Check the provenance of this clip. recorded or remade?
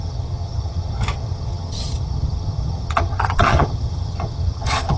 remade